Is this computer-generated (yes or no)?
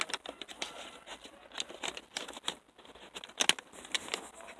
no